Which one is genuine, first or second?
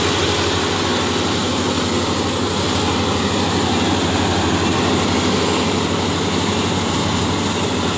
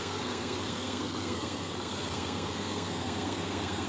first